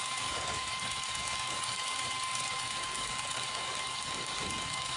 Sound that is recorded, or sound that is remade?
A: remade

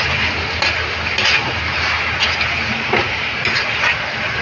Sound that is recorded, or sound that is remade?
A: recorded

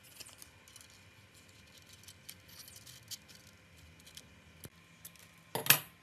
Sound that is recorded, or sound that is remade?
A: recorded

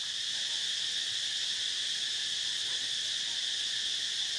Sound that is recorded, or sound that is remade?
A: recorded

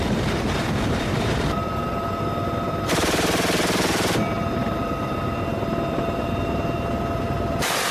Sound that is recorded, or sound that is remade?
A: remade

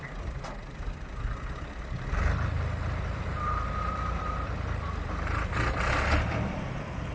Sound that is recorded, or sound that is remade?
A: remade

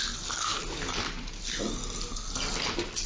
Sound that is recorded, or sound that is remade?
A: recorded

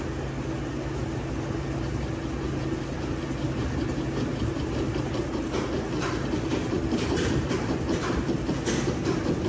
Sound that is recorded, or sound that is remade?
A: recorded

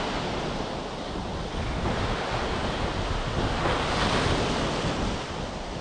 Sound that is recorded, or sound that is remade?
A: recorded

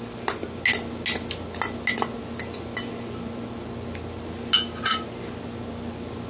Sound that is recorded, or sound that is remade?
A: recorded